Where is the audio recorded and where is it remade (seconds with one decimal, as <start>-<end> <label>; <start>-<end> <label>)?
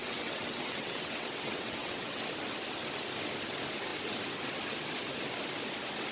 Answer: 0.0-2.2 remade; 2.2-6.1 recorded